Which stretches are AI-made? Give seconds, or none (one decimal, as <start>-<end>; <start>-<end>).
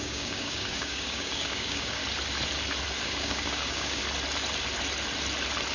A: 0.0-2.0; 3.0-4.0